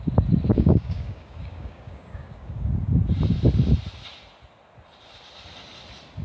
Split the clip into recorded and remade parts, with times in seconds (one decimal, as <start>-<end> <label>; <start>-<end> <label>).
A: 0.0-0.5 recorded; 0.5-2.7 remade; 2.7-6.2 recorded